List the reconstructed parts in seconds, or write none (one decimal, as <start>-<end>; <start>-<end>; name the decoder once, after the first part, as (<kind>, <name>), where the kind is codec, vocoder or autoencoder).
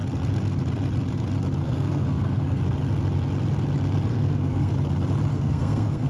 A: 1.6-2.6 (codec, SNAC); 4.1-4.7; 5.3-6.1